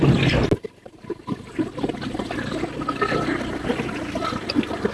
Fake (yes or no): no